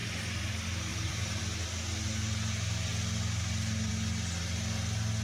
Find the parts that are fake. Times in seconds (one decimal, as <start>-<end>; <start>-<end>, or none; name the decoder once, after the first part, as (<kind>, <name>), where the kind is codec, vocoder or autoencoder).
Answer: 0.0-0.5 (vocoder, BigVGAN v2); 0.9-1.4